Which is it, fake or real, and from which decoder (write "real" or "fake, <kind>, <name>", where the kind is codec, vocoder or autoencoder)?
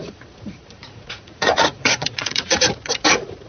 fake, vocoder, Vocos